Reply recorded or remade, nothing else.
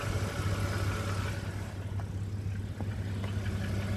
recorded